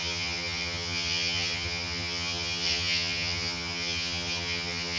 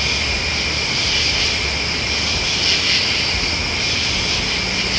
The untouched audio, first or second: second